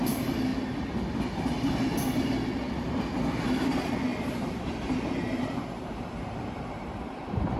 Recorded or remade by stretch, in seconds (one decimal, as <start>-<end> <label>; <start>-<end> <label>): 0.0-0.5 remade; 0.5-3.4 recorded; 3.4-7.6 remade